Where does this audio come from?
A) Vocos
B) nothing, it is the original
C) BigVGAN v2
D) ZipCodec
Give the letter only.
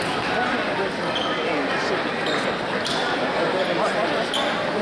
B